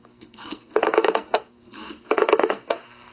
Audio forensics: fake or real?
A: fake